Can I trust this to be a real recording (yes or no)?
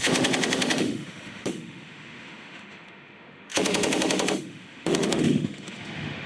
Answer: no